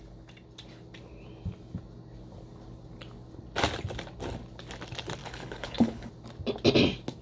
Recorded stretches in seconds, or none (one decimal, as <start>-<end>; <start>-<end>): 0.0-5.2; 6.1-7.2